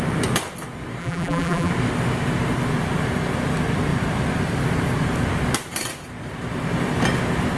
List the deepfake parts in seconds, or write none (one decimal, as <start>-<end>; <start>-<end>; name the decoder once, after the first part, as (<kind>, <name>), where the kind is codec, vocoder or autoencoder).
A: 1.0-1.7 (vocoder, BigVGAN v2)